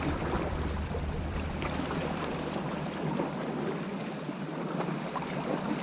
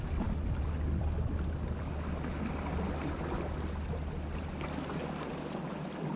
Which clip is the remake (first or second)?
first